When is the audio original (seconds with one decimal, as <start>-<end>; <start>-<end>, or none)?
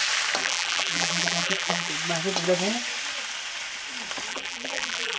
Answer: 0.0-0.4; 1.9-4.3